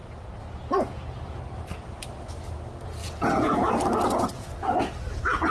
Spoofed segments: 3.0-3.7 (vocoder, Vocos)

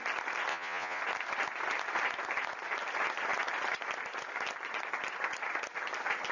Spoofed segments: 0.5-1.0 (vocoder, Vocos)

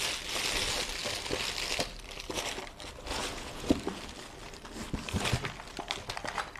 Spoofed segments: 3.1-3.7 (vocoder, Vocos)

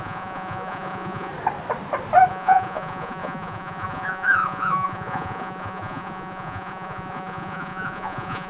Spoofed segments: 0.0-1.3 (vocoder, Vocos); 2.3-8.5

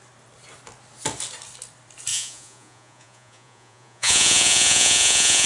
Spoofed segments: 2.1-5.5 (vocoder, Vocos)